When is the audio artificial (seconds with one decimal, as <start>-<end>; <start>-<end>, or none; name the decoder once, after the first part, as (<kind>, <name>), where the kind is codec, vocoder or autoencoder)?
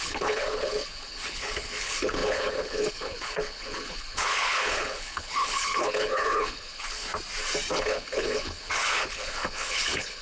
0.0-7.1 (codec, HILCodec); 7.7-10.2